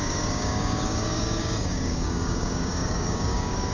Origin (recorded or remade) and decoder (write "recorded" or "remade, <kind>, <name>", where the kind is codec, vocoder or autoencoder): remade, codec, DAC